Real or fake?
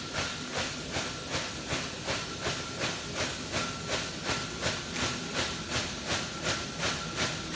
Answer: real